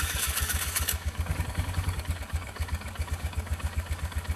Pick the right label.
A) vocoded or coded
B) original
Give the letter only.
A